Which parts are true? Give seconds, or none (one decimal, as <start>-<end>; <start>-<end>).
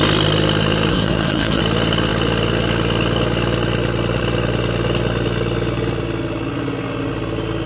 0.0-0.9; 1.6-7.7